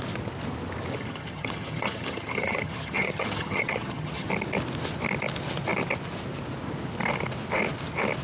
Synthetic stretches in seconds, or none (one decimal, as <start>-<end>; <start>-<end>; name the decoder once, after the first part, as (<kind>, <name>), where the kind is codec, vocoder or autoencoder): 0.9-4.3 (vocoder, HiFi-GAN)